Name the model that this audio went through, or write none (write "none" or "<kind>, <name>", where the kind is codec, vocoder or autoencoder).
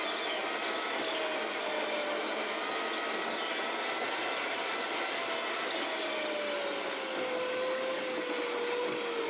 none